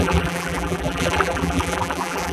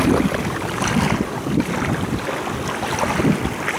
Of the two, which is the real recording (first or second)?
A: second